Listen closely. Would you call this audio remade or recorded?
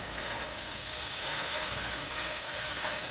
remade